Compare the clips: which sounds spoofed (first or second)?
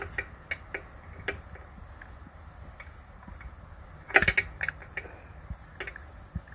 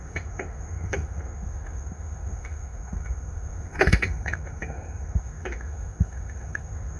second